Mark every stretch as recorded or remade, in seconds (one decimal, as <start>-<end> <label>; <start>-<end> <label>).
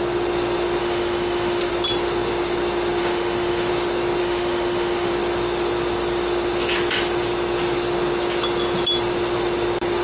0.0-0.8 recorded; 0.8-1.7 remade; 1.7-3.0 recorded; 3.0-3.7 remade; 3.7-4.2 recorded; 4.2-5.1 remade; 5.1-10.0 recorded